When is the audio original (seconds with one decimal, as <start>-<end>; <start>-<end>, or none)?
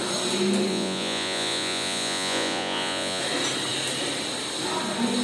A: 0.0-0.7; 3.2-5.2